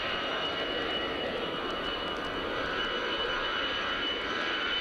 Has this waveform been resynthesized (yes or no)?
yes